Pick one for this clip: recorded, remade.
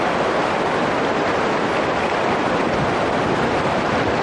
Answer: recorded